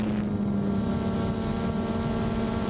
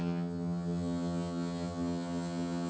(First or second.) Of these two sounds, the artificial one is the second